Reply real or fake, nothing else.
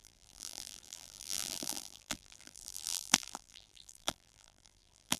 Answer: fake